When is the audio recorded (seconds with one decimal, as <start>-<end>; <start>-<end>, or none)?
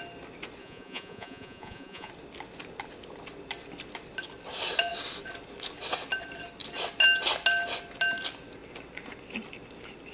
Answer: 0.0-0.6; 2.1-10.1